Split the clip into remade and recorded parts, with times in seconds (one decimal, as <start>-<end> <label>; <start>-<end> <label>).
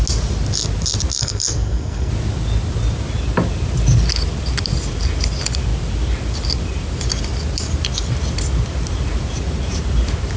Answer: 0.0-1.2 recorded; 1.2-2.1 remade; 2.1-10.4 recorded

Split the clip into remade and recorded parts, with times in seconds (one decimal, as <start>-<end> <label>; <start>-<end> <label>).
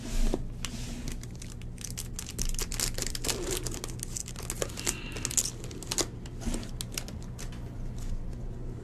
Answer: 0.0-8.8 recorded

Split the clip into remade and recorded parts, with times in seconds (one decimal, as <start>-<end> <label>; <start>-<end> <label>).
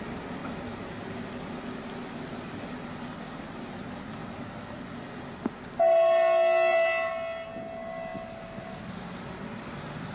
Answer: 0.0-10.1 recorded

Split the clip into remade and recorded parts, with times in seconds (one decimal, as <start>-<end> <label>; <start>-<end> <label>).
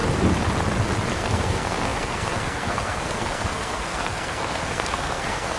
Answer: 0.0-1.1 recorded; 1.1-5.6 remade